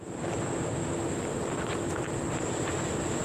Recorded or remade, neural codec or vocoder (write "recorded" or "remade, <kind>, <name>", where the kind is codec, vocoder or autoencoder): recorded